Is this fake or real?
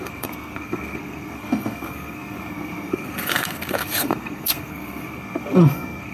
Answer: fake